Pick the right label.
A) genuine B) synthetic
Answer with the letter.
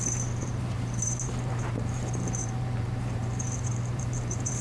B